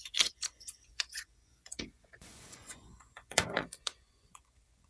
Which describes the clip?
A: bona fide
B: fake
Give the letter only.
B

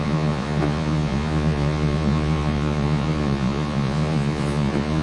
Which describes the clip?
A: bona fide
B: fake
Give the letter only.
B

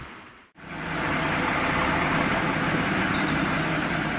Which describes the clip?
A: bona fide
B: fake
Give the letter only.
A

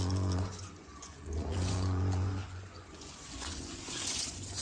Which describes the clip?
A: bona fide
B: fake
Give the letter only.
B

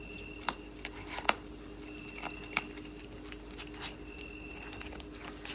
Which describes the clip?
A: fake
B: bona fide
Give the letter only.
B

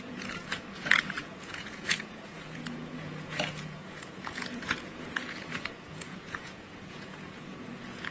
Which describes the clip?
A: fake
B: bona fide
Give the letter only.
A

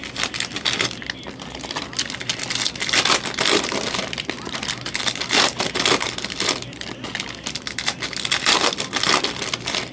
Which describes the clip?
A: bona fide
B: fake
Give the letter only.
A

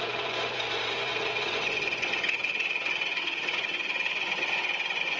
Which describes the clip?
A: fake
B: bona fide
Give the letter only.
A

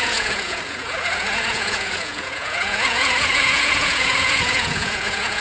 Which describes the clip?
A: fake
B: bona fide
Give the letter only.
A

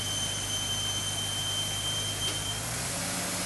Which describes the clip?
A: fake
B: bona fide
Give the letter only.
B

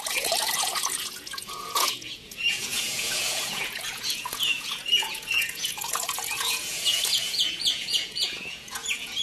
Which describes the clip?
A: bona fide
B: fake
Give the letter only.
B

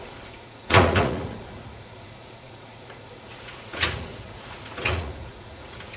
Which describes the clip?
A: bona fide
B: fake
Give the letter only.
B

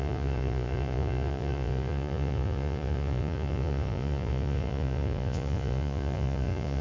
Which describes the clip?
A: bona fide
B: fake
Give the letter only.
B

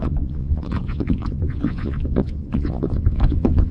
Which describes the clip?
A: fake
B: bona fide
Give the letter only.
A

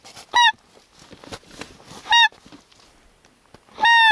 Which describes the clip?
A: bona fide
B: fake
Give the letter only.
A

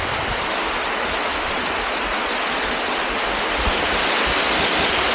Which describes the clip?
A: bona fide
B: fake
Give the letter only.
A